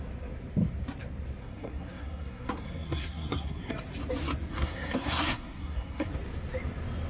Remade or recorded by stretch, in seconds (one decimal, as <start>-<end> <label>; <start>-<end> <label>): 0.0-1.4 recorded; 1.4-3.7 remade; 3.7-4.5 recorded; 4.5-6.1 remade; 6.1-7.1 recorded